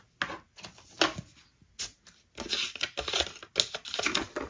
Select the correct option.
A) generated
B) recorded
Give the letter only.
B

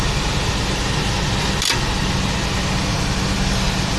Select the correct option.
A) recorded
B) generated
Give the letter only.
A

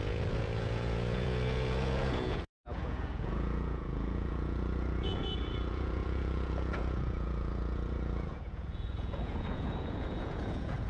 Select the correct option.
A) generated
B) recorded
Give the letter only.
A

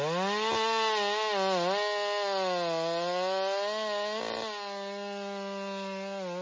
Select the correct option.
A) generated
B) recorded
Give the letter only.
B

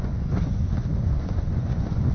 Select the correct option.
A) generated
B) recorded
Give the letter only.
A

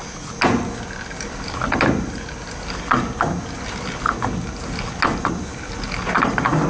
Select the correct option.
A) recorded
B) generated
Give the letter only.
A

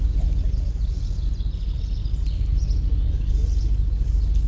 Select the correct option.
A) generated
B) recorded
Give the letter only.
B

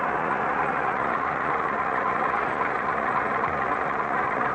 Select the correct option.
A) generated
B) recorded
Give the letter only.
A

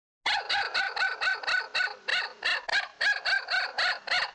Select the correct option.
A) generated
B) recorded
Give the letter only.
B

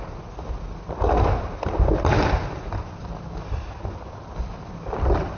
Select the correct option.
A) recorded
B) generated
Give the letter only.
A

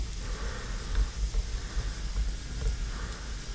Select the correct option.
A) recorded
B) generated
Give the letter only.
A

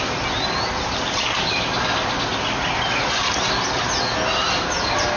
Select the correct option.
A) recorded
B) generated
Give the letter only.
A